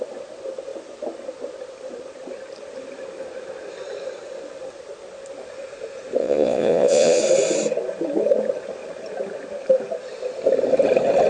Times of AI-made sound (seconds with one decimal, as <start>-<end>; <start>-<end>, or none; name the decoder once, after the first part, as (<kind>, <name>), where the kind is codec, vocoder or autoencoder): 6.2-7.2 (vocoder, Vocos)